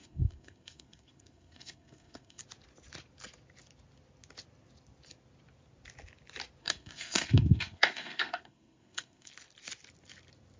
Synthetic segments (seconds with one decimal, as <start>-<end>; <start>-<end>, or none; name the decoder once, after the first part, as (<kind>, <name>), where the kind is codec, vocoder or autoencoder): 0.0-2.4 (codec, SNAC); 6.6-9.3